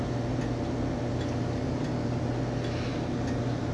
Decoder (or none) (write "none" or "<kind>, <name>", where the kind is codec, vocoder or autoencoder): none